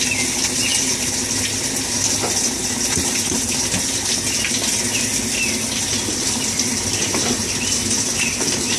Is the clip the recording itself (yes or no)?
yes